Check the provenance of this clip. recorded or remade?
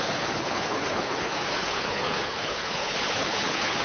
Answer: remade